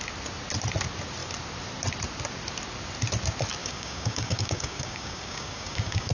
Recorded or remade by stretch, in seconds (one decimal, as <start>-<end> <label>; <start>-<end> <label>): 0.0-3.6 recorded; 3.6-6.1 remade